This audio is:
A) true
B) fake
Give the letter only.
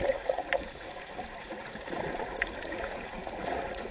B